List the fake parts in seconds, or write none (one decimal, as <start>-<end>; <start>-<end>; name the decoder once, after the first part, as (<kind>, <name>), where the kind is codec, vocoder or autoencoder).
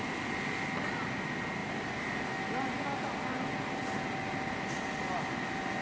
1.6-2.3 (vocoder, BigVGAN v2)